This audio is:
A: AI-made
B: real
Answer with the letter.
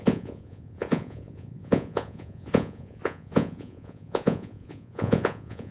A